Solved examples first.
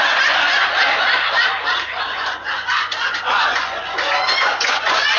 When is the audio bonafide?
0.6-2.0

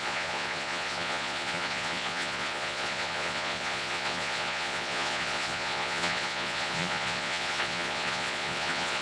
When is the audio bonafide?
none

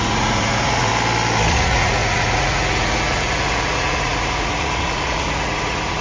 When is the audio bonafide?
0.9-1.5

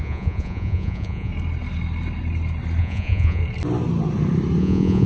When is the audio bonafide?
1.3-2.8; 3.4-4.6

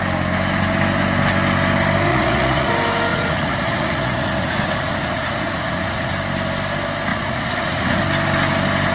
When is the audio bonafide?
0.0-2.1; 2.7-3.1; 6.1-7.1; 8.0-8.9

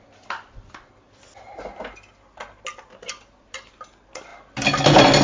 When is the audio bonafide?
0.0-5.2

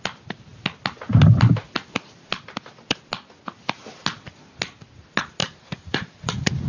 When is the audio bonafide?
0.0-5.4

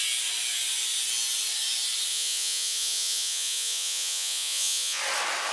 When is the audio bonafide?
0.0-2.1; 5.0-5.5